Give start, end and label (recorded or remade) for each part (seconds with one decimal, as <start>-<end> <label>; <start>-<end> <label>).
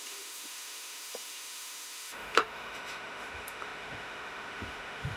0.0-5.2 remade